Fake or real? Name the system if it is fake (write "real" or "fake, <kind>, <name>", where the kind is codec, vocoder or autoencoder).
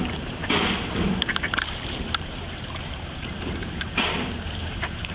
fake, vocoder, BigVGAN v2